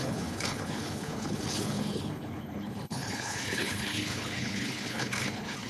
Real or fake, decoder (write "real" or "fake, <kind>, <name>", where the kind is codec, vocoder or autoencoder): fake, codec, HILCodec